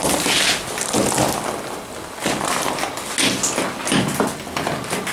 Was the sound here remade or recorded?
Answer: recorded